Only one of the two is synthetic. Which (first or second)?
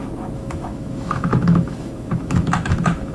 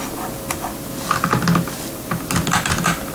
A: first